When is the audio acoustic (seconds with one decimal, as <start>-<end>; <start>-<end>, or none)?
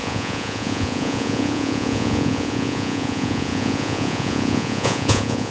none